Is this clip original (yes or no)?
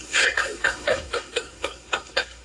no